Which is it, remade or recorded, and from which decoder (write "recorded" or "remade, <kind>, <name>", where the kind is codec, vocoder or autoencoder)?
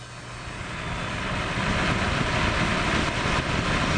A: recorded